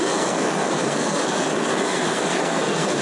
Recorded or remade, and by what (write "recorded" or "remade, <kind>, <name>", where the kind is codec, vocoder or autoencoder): remade, codec, SNAC